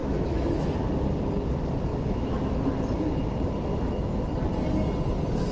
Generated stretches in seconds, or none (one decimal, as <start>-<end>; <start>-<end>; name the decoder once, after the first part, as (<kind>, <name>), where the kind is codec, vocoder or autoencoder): 0.0-0.7 (autoencoder, DAC-VAE); 1.9-2.4; 3.7-4.2